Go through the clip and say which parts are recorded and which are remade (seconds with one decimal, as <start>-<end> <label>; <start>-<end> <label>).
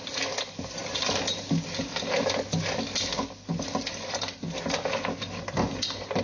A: 0.0-6.2 recorded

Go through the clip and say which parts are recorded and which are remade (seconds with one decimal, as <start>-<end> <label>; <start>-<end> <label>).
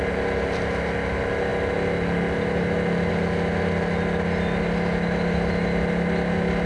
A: 0.0-6.7 recorded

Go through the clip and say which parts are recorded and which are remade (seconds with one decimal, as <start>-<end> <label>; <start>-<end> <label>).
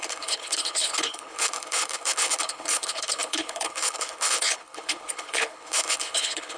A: 0.0-6.6 remade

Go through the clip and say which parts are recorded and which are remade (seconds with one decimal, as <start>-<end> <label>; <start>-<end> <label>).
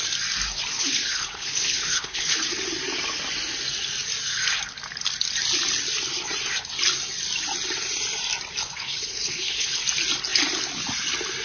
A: 0.0-0.7 recorded; 0.7-2.4 remade; 2.4-8.6 recorded; 8.6-9.8 remade; 9.8-11.4 recorded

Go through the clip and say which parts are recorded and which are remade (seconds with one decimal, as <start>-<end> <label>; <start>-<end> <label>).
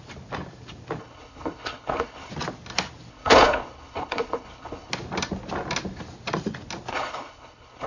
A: 0.0-1.0 recorded; 1.0-2.3 remade; 2.3-3.1 recorded; 3.1-4.9 remade; 4.9-6.9 recorded; 6.9-7.9 remade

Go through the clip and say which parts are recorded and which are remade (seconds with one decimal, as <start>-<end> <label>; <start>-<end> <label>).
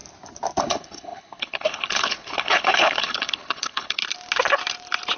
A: 0.0-0.6 recorded; 0.6-4.0 remade; 4.0-5.2 recorded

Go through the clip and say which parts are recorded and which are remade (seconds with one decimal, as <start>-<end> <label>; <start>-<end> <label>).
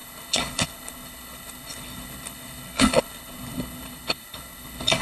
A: 0.0-5.0 remade